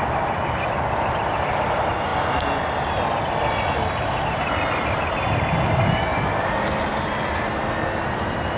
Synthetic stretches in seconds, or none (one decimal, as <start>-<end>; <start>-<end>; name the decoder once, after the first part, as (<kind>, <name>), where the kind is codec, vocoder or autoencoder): none